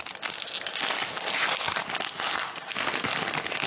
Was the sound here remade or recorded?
recorded